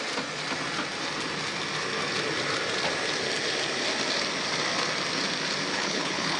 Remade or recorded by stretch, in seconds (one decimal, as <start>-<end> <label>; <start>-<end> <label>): 0.0-5.7 recorded; 5.7-6.4 remade